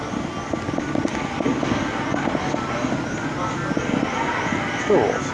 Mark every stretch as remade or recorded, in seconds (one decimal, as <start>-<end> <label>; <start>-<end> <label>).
0.0-5.3 recorded